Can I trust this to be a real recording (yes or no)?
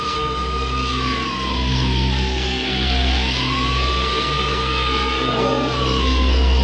no